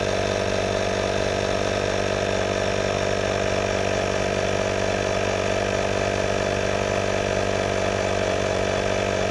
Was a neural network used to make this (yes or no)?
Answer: no